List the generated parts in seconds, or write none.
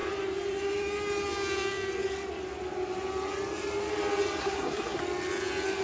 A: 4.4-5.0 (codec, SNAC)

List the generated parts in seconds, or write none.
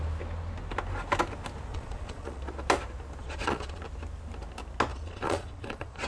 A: 1.7-2.4 (vocoder, Vocos); 3.2-3.8; 4.9-6.1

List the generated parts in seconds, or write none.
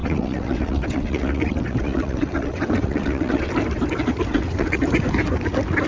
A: 0.0-3.5 (vocoder, WaveNeXt); 4.3-4.8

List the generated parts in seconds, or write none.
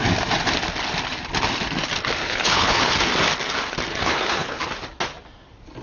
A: 2.2-2.9 (codec, HILCodec); 3.9-4.6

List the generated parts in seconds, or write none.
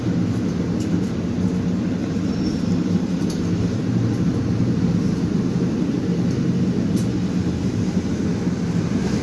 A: 2.0-3.8 (vocoder, BigVGAN v2); 7.1-8.1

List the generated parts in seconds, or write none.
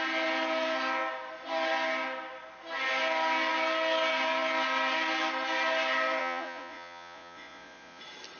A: 6.2-8.0 (vocoder, Vocos)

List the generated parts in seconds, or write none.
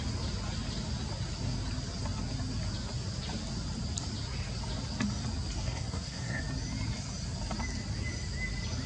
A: 5.6-6.4 (codec, SNAC)